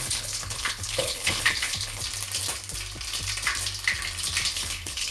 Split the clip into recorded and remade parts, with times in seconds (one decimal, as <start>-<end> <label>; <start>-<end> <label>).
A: 0.0-2.0 remade; 2.0-4.5 recorded; 4.5-5.1 remade